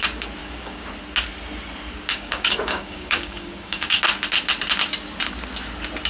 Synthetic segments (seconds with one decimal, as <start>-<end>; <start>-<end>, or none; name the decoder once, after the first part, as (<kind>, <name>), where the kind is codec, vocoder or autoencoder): 0.4-0.9 (codec, DAC); 2.1-4.0